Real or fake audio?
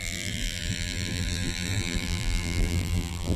fake